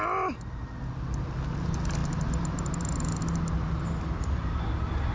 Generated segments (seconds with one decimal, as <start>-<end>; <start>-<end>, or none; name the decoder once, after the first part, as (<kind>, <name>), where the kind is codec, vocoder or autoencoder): none

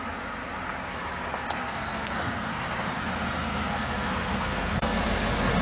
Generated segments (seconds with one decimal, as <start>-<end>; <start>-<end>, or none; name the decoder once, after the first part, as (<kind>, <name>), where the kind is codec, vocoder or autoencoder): 1.6-3.0 (codec, SNAC); 3.4-5.0